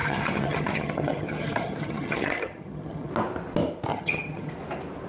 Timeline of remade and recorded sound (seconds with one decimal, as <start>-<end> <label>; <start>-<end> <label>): 0.0-3.1 remade; 3.1-3.9 recorded; 3.9-4.5 remade; 4.5-5.1 recorded